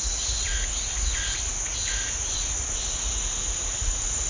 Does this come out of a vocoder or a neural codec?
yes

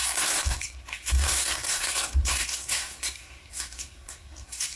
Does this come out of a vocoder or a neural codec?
yes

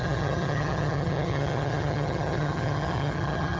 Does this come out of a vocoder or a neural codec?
yes